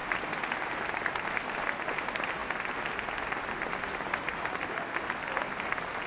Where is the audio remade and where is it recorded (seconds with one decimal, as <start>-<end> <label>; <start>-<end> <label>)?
0.0-6.1 recorded